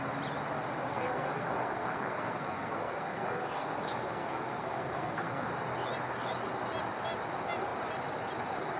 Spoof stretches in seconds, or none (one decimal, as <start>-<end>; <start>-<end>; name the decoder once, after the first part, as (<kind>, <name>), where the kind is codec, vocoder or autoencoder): 0.9-5.5 (codec, SNAC)